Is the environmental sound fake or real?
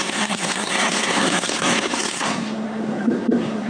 fake